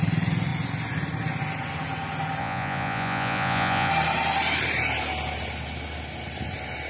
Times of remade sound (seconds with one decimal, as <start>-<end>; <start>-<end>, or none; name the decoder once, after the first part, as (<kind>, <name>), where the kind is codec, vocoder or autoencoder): 2.4-3.9 (vocoder, Vocos)